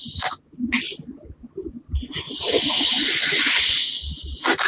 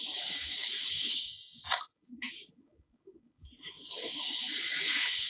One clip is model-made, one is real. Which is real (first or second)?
first